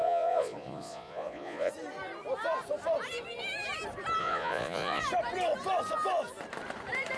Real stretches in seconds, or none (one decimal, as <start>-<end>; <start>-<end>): 1.7-4.2; 5.0-7.2